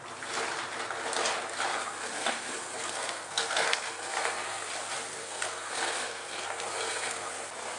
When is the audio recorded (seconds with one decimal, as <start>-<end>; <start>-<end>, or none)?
0.0-1.7; 4.7-5.2; 7.3-7.8